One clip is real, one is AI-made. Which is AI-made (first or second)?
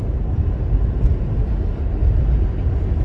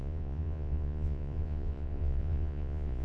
second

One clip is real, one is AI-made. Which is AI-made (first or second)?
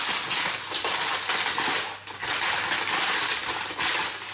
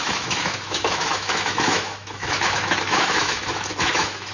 second